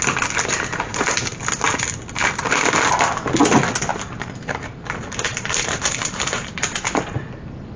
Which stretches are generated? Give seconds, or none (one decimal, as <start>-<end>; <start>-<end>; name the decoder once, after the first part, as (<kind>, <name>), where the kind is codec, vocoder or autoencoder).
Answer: 0.9-1.4 (vocoder, BigVGAN v2); 3.9-7.0